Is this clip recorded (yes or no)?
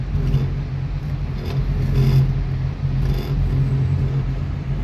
yes